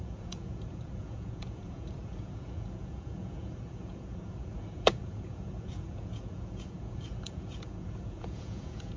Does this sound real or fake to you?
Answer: fake